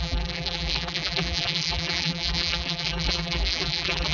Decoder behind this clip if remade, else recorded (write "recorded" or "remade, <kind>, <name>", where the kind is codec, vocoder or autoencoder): remade, vocoder, BigVGAN v2